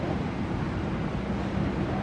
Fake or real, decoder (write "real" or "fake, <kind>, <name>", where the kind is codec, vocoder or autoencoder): real